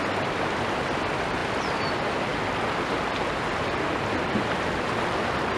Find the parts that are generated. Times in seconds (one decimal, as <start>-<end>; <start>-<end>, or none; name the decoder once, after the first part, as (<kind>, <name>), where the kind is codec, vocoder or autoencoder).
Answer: none